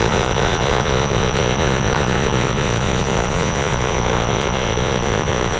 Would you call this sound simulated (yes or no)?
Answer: yes